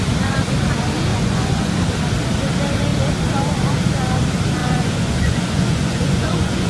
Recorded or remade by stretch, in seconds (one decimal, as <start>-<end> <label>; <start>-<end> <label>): 0.0-1.1 recorded; 1.1-1.7 remade; 1.7-4.6 recorded; 4.6-6.7 remade